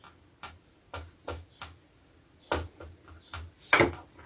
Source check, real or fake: real